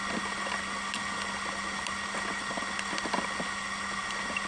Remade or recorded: recorded